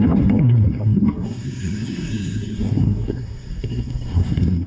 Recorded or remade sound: remade